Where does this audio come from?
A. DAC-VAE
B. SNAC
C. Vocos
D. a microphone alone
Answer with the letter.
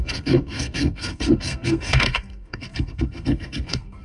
B